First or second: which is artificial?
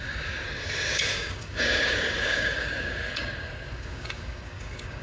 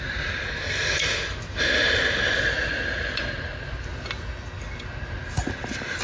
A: first